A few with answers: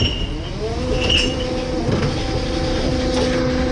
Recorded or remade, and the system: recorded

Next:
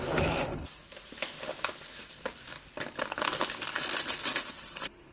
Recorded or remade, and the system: recorded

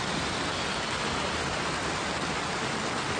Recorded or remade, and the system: recorded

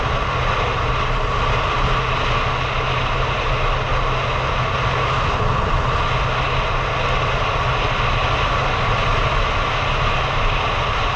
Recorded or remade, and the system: recorded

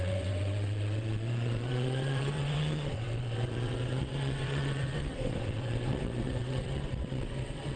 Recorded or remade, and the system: remade, vocoder, WaveNeXt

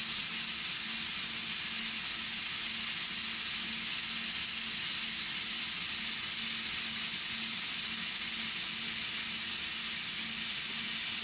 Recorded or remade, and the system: recorded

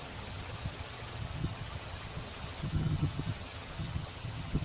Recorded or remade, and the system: remade, vocoder, HiFi-GAN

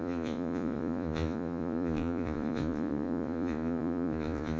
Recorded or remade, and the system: remade, vocoder, Vocos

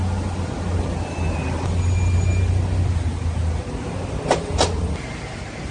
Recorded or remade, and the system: recorded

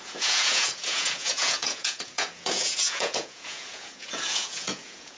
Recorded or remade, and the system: remade, vocoder, Vocos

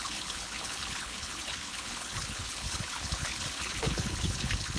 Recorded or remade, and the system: remade, codec, HILCodec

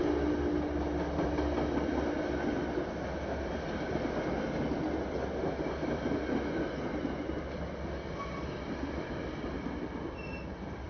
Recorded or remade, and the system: recorded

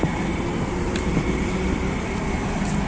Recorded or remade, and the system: recorded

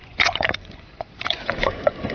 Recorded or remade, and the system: remade, vocoder, Vocos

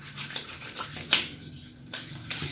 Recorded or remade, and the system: recorded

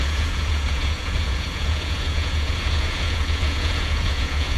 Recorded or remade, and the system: remade, vocoder, Vocos